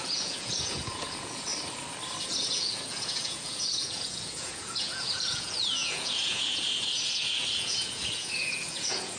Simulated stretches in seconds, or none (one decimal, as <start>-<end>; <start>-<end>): 0.0-1.5; 2.2-9.2